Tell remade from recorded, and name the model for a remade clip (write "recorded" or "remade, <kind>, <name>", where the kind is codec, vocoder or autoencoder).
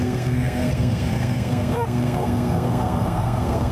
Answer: remade, codec, SNAC